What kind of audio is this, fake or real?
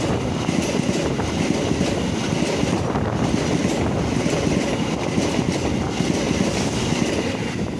real